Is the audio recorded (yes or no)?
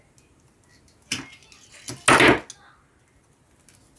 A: yes